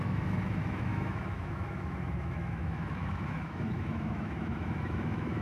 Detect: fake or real fake